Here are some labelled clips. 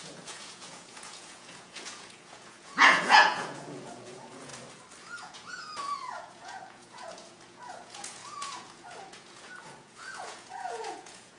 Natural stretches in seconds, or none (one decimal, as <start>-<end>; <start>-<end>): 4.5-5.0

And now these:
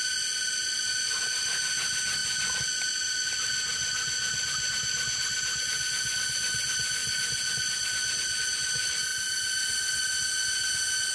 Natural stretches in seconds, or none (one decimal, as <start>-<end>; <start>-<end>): 0.0-11.1

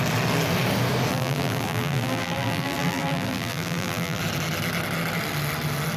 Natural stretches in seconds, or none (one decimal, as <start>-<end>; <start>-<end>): 0.0-1.1; 4.2-6.0

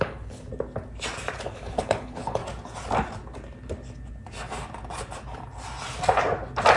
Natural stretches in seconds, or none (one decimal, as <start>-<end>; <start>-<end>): 0.5-1.4; 2.4-6.8